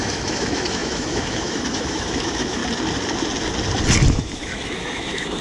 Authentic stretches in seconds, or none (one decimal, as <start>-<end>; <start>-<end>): 2.6-4.1